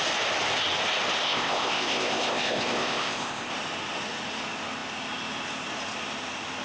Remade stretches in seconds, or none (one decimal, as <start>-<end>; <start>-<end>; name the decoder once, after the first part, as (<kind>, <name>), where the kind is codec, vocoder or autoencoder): 1.2-3.5 (codec, ZipCodec)

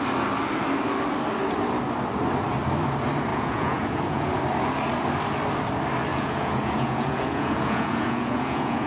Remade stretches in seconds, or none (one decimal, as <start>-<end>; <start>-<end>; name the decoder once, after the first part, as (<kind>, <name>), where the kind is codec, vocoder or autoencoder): 3.3-4.3 (vocoder, Vocos); 6.1-8.9

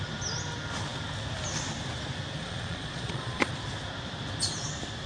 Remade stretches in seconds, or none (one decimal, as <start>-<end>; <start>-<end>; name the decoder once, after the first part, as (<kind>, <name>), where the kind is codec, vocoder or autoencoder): 2.4-3.5 (vocoder, Vocos)

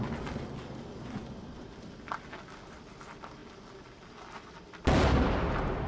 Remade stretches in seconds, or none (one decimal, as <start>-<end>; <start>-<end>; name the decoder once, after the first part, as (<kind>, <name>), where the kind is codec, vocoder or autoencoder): none

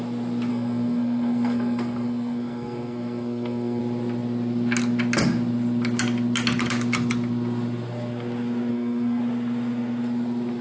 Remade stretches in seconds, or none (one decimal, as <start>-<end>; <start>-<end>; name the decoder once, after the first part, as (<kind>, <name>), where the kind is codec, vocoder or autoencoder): 0.5-3.8 (codec, SNAC); 8.7-9.2

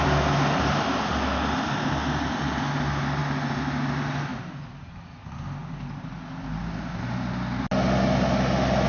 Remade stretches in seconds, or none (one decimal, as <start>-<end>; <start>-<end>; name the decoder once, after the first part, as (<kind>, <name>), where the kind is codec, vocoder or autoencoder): none

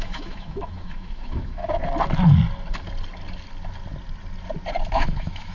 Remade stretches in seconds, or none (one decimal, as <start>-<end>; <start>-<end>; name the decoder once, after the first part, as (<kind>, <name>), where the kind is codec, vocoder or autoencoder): 0.0-1.6 (autoencoder, DAC-VAE); 4.9-5.5

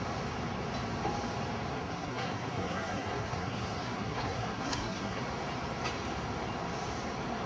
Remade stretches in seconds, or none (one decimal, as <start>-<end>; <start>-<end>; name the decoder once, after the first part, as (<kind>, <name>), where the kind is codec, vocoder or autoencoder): 1.7-5.2 (codec, SNAC)